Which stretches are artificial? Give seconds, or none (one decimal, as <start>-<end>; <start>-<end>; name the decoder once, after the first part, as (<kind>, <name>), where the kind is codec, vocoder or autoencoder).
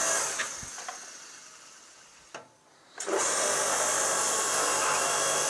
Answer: 0.7-4.0 (vocoder, BigVGAN v2)